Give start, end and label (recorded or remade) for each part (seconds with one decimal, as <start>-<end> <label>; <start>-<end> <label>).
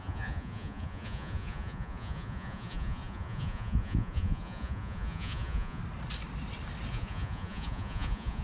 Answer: 0.0-5.8 remade; 5.8-6.9 recorded; 6.9-8.4 remade